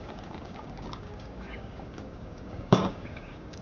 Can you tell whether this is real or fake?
fake